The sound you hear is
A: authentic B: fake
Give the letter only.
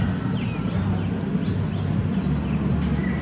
A